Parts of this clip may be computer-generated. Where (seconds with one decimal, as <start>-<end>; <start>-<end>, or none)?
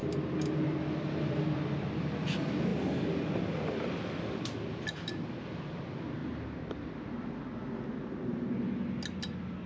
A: none